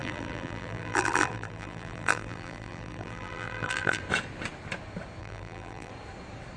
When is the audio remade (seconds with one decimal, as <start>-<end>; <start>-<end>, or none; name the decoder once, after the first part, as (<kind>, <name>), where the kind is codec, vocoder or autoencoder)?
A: 0.0-4.0 (vocoder, BigVGAN v2); 5.2-5.9